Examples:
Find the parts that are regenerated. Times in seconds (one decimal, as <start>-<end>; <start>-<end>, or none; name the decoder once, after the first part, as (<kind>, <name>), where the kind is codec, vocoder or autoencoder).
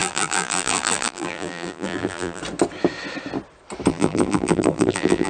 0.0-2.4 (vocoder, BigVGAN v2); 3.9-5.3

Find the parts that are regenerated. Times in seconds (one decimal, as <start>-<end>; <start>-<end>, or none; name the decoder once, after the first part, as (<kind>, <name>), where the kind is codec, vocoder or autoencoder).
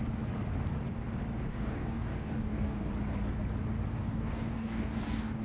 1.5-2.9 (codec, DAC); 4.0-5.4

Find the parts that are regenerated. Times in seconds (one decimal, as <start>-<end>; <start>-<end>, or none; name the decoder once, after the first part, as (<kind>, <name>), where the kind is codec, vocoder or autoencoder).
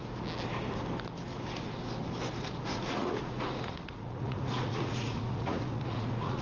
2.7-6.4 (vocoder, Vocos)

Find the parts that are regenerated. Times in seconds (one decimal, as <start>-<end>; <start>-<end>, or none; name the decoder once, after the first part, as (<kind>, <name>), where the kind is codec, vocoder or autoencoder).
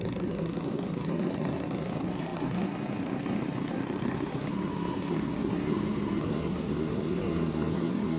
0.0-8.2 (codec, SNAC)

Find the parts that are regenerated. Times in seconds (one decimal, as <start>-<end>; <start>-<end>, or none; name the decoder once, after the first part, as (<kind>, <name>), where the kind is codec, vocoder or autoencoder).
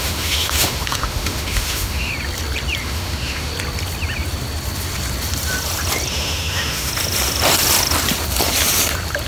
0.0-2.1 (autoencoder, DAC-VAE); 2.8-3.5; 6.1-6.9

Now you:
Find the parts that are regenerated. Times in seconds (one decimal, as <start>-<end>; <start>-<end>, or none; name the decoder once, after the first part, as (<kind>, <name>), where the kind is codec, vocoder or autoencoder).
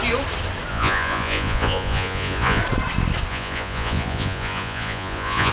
0.7-2.6 (vocoder, Vocos); 3.3-5.5